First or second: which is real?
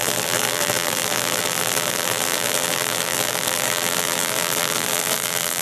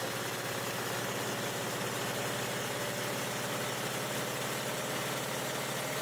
second